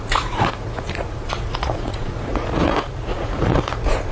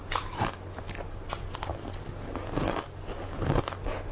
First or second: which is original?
second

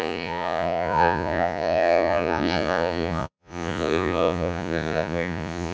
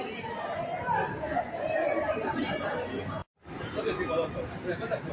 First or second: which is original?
second